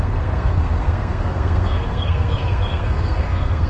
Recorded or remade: remade